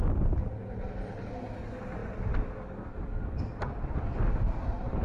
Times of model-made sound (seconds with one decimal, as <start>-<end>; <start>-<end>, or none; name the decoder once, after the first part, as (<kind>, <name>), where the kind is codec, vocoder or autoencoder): none